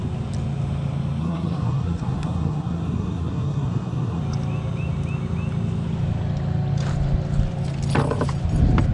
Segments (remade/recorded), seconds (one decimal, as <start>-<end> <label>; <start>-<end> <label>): 0.0-1.2 recorded; 1.2-4.2 remade; 4.2-8.9 recorded